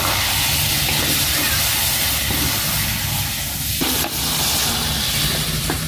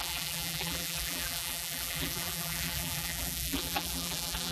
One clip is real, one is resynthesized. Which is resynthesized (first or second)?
second